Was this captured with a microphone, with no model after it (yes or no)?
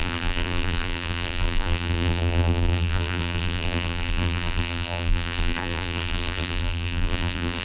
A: no